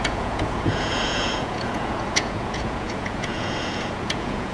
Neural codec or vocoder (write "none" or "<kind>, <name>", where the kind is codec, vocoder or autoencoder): vocoder, Vocos